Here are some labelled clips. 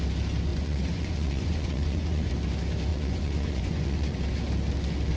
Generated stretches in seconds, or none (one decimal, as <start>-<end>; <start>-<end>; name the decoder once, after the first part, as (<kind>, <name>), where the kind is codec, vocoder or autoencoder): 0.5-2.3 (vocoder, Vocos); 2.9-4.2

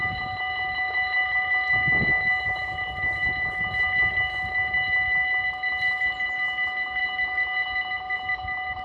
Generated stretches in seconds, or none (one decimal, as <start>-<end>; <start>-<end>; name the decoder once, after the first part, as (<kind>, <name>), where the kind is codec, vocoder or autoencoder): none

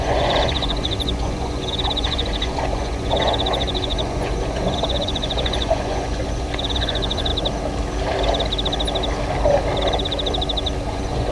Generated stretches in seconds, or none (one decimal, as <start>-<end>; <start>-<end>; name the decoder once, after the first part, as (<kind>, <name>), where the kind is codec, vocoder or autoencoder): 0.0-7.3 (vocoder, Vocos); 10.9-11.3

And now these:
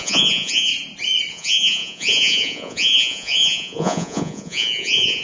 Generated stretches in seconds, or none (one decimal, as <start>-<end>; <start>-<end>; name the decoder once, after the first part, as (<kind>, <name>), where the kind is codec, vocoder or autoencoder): 0.0-0.7 (vocoder, Vocos); 1.3-5.2